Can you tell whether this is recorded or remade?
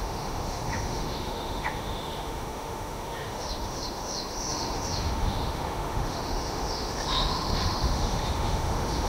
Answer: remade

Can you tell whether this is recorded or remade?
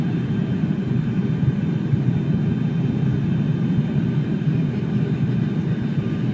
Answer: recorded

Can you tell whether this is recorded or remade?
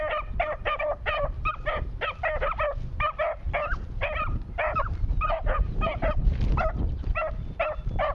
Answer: recorded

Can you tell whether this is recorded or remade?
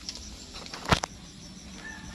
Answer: recorded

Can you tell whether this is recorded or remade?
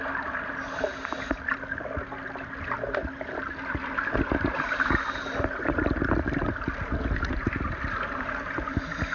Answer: recorded